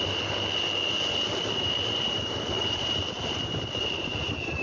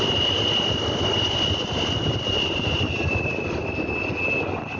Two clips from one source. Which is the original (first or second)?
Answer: second